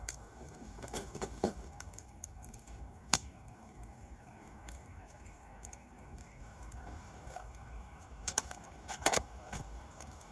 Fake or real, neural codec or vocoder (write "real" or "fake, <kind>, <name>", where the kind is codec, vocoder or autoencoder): fake, codec, DAC